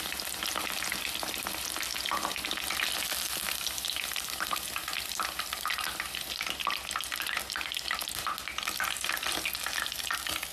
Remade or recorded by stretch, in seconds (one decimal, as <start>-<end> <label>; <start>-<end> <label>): 0.0-10.5 recorded